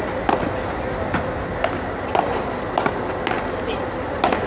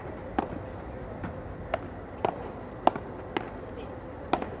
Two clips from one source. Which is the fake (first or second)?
second